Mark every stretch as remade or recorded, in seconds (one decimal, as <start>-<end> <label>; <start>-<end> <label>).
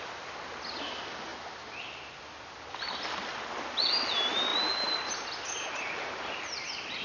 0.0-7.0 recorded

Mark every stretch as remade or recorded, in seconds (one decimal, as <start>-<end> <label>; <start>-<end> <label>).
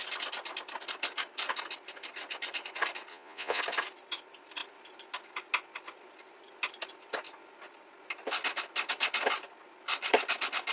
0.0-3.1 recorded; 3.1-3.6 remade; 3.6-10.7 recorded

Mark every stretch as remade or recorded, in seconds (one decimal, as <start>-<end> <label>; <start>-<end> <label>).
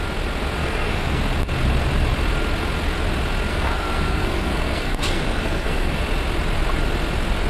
0.0-0.6 recorded; 0.6-1.2 remade; 1.2-3.5 recorded; 3.5-6.0 remade; 6.0-7.5 recorded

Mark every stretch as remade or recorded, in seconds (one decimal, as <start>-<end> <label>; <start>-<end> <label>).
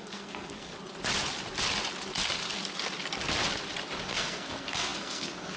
0.0-0.7 remade; 0.7-4.0 recorded; 4.0-5.6 remade